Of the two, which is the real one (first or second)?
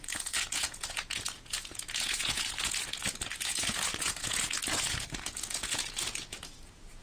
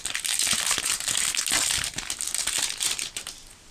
second